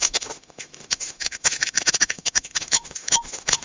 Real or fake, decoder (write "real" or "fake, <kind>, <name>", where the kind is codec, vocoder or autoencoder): fake, autoencoder, DAC-VAE